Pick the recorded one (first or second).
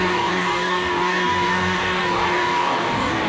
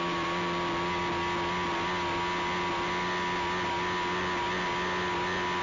second